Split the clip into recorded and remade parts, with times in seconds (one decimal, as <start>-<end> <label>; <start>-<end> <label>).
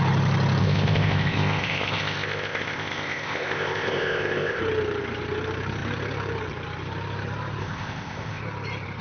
0.0-0.6 recorded; 0.6-4.6 remade; 4.6-7.6 recorded; 7.6-8.4 remade; 8.4-9.0 recorded